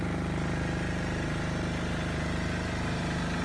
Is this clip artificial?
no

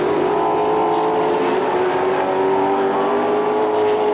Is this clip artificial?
no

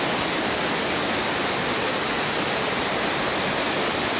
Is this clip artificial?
no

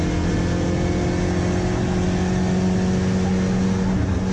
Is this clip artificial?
no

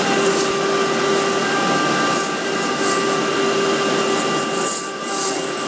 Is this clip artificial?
no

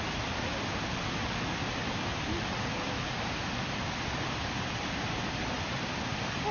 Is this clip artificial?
no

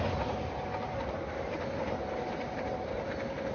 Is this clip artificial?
no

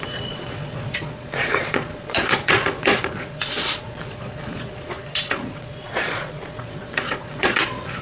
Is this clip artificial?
yes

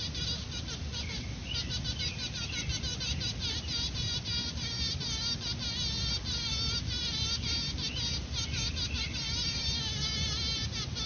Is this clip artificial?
no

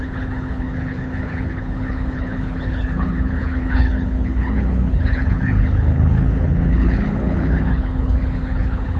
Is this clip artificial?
yes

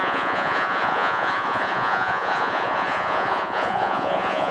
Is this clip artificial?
yes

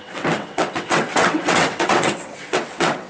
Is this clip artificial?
yes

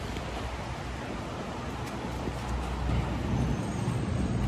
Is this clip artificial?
no